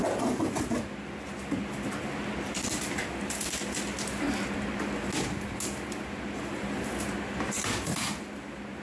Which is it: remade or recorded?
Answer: recorded